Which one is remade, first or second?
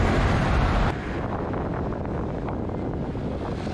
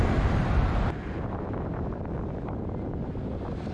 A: second